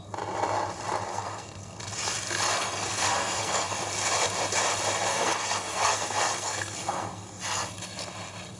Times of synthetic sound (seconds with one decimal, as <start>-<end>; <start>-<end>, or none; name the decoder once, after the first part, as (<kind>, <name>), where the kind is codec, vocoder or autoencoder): 1.1-1.8 (codec, SNAC); 2.5-3.8; 5.1-7.4